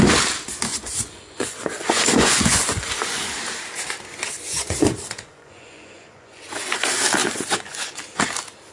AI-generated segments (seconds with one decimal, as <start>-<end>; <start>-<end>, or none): 0.7-3.4; 4.5-6.8; 7.2-8.0